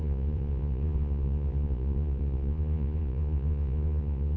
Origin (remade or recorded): remade